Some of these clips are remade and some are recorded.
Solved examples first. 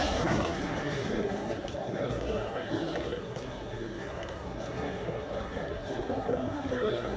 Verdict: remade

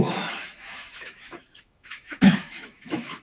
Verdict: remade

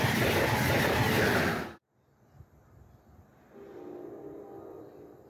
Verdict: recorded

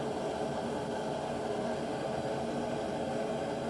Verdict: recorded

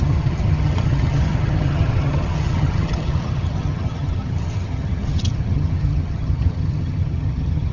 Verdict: remade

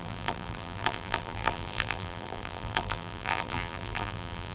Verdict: remade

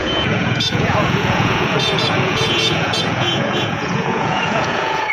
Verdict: remade